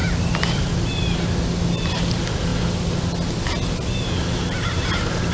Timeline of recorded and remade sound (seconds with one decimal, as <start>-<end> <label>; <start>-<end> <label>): 0.0-0.6 remade; 0.6-5.3 recorded